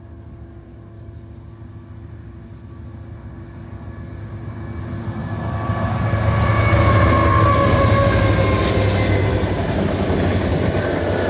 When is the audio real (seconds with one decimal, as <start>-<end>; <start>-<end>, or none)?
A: 0.0-7.2; 7.8-11.3